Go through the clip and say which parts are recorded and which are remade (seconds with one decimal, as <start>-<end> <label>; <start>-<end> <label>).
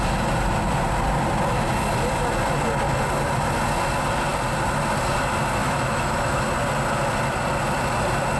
0.0-5.6 recorded; 5.6-6.4 remade; 6.4-8.4 recorded